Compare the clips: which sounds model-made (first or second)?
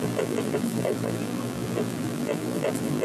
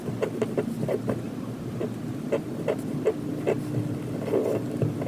first